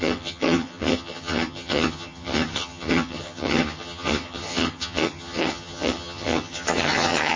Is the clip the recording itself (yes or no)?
no